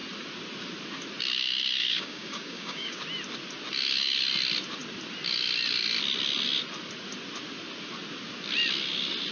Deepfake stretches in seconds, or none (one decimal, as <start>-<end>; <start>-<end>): 1.8-3.0